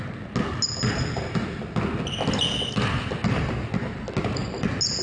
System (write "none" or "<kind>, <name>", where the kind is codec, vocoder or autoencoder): none